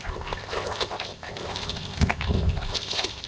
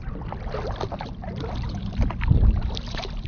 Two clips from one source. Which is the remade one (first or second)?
first